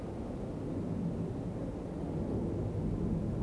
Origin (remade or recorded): recorded